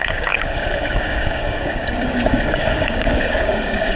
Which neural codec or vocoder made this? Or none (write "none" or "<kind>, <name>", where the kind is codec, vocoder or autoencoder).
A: codec, DAC